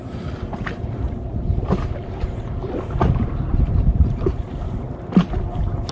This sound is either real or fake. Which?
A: fake